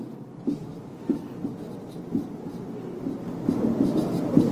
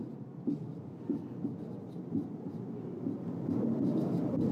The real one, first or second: first